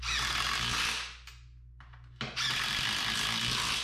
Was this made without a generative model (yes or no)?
yes